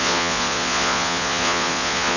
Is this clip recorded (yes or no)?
no